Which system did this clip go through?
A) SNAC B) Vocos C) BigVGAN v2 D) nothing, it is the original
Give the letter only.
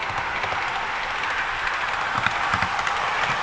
D